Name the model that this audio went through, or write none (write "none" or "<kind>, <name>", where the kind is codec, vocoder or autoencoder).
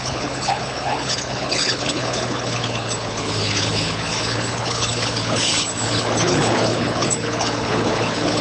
codec, HILCodec